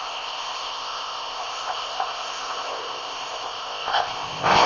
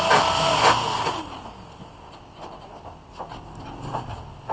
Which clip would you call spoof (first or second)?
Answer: first